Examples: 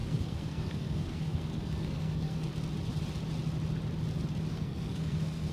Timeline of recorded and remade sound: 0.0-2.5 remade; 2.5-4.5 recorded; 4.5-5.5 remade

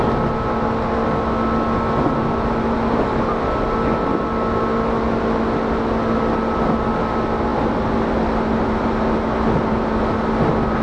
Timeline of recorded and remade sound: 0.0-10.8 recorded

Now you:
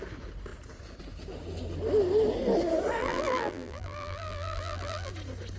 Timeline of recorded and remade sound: 0.0-3.0 recorded; 3.0-5.1 remade; 5.1-5.6 recorded